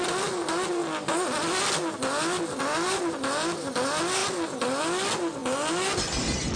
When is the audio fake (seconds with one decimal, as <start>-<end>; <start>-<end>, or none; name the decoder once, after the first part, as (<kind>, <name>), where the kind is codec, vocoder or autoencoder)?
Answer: none